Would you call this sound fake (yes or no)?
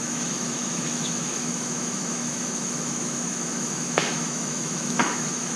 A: yes